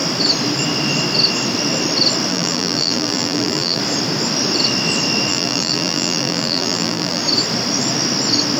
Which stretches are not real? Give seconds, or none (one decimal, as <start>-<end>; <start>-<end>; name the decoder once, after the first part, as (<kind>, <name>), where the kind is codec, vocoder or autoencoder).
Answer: 2.3-3.8 (vocoder, BigVGAN v2); 5.3-7.2